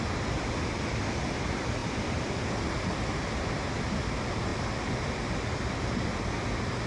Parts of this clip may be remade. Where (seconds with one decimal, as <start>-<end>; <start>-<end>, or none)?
none